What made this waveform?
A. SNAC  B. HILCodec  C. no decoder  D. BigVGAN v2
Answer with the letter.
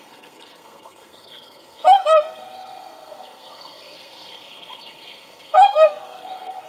A